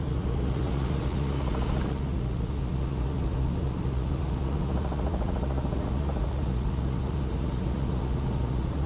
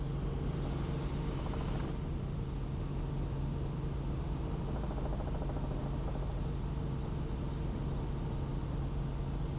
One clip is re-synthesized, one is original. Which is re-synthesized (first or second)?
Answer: first